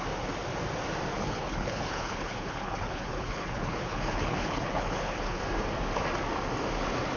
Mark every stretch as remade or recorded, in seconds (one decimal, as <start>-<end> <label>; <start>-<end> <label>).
0.0-1.1 recorded; 1.1-5.4 remade; 5.4-7.2 recorded